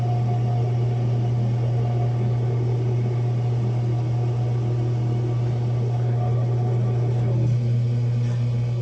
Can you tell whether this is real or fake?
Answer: real